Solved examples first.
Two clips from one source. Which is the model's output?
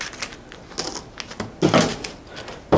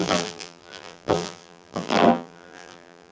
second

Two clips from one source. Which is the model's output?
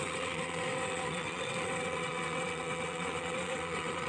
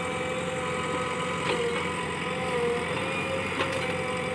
first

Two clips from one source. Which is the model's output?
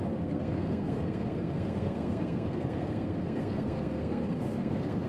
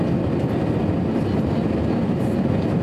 first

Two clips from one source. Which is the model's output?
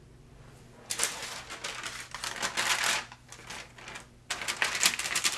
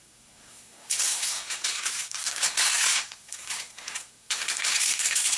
second